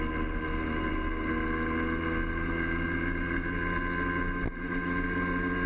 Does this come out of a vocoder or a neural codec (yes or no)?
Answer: no